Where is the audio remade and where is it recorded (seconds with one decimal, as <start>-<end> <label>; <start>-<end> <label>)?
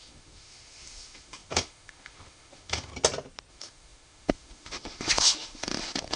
0.0-2.9 remade; 2.9-3.5 recorded; 3.5-6.2 remade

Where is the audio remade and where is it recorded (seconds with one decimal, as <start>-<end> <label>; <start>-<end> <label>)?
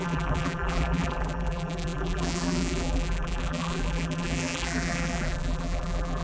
0.0-6.2 remade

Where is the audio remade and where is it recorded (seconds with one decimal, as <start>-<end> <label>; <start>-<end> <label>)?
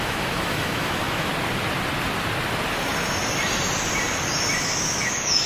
0.0-1.3 remade; 1.3-4.6 recorded; 4.6-5.5 remade